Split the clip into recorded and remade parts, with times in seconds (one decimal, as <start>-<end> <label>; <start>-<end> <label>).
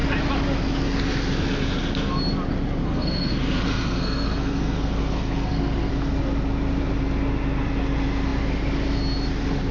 0.0-2.8 recorded; 2.8-5.9 remade; 5.9-9.7 recorded